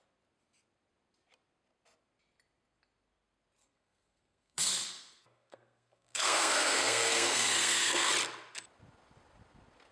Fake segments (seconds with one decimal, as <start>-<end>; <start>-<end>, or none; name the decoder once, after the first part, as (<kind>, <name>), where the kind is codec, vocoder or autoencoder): 3.6-8.1 (codec, SNAC)